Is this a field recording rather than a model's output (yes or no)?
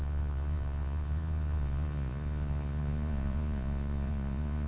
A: no